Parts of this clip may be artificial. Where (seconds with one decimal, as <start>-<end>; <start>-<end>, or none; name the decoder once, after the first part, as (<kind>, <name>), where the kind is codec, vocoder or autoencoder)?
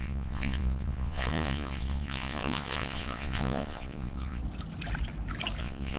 0.0-4.4 (vocoder, Vocos); 5.6-6.0